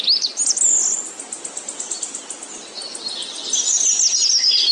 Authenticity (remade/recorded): recorded